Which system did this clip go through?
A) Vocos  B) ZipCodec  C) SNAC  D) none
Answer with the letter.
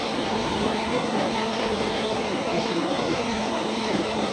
C